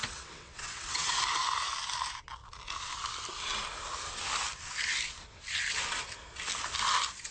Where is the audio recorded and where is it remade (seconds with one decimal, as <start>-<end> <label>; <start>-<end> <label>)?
0.0-1.2 remade; 1.2-7.3 recorded

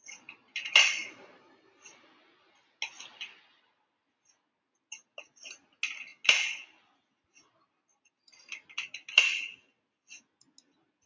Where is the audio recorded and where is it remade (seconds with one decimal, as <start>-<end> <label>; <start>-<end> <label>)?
0.0-11.1 recorded

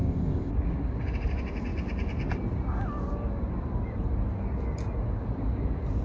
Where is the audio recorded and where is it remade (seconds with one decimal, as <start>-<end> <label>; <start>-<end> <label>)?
0.0-0.5 remade; 0.5-6.0 recorded

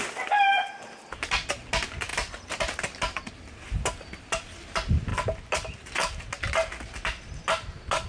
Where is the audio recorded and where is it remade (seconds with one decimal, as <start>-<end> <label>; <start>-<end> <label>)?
0.0-8.1 recorded

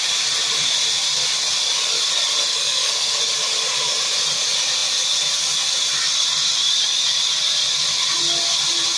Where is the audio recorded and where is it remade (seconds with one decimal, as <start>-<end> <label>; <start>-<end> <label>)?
0.0-2.5 recorded; 2.5-3.2 remade; 3.2-9.0 recorded

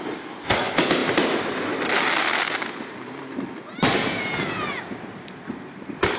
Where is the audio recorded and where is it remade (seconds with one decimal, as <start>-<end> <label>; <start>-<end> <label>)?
0.0-4.0 recorded; 4.0-4.8 remade; 4.8-6.2 recorded